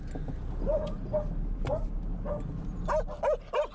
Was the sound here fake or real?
real